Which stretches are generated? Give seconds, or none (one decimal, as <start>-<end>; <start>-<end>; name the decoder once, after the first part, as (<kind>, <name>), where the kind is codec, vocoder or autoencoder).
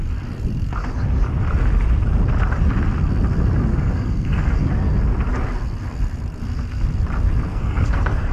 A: 3.7-4.6 (codec, SNAC); 7.5-8.3